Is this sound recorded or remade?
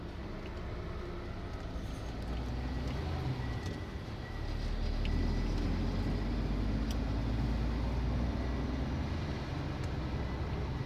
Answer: recorded